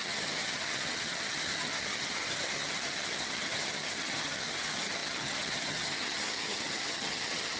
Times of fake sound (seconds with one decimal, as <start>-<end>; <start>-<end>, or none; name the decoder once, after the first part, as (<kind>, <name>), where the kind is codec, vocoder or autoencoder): 0.0-7.6 (vocoder, HiFi-GAN)